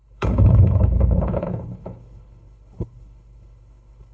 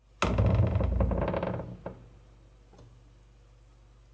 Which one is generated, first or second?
first